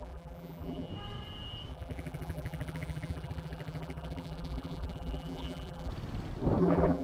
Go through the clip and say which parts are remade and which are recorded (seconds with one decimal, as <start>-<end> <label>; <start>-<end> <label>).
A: 0.0-0.9 remade; 0.9-1.7 recorded; 1.7-5.9 remade; 5.9-6.6 recorded; 6.6-7.0 remade